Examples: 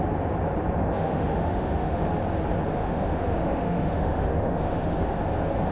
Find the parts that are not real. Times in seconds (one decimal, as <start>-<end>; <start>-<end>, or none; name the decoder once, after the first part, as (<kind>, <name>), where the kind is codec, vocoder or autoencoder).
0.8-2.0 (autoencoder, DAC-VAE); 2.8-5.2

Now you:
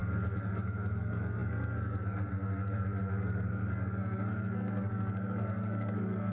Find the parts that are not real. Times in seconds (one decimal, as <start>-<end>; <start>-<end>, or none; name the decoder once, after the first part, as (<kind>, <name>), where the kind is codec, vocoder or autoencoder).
0.0-6.3 (codec, SNAC)

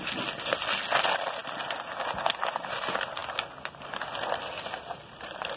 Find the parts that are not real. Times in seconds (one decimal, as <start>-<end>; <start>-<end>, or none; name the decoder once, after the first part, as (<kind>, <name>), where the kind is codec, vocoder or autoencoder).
none

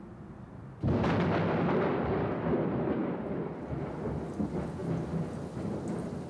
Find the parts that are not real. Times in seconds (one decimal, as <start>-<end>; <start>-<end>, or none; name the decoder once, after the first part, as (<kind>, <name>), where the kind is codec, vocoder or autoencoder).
none

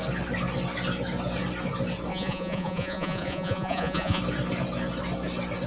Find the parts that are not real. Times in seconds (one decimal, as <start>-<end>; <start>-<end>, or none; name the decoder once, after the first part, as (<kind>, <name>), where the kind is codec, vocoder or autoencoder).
2.1-4.2 (vocoder, Vocos)